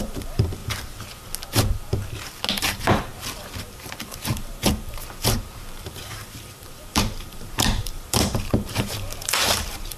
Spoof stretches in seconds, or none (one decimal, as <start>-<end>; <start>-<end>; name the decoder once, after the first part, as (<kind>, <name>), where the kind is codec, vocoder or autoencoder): 0.0-0.6 (vocoder, BigVGAN v2); 2.6-10.0